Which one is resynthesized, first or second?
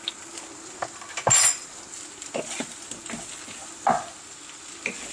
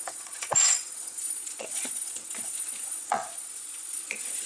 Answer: second